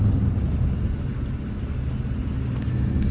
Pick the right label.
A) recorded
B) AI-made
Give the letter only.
A